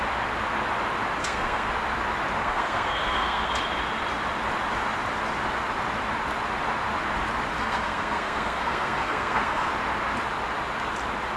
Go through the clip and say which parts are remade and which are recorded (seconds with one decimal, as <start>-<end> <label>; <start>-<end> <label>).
0.0-1.2 recorded; 1.2-1.7 remade; 1.7-2.4 recorded; 2.4-3.5 remade; 3.5-7.6 recorded; 7.6-9.7 remade; 9.7-11.4 recorded